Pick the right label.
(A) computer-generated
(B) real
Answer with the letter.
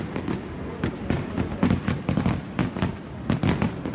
B